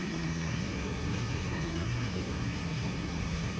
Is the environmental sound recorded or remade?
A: remade